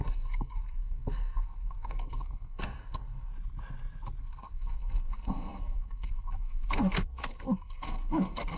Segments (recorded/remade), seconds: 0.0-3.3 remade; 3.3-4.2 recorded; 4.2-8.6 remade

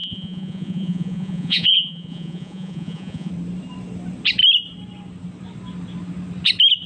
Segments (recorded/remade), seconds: 0.0-3.3 remade; 3.3-6.9 recorded